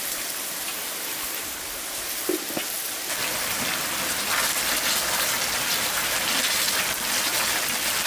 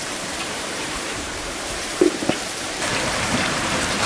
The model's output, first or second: second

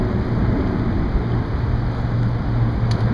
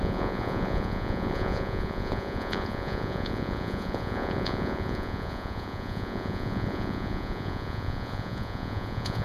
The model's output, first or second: second